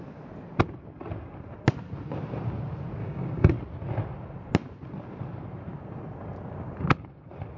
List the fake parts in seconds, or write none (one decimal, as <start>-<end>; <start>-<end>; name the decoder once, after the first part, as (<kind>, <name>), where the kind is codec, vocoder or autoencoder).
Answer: 3.0-3.5 (codec, DAC)